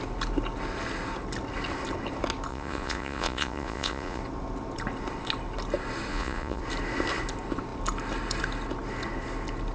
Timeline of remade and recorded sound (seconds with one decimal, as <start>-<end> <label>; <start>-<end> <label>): 0.0-2.5 recorded; 2.5-4.2 remade; 4.2-6.1 recorded; 6.1-6.6 remade; 6.6-9.7 recorded